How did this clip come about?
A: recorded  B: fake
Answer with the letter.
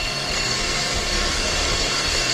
B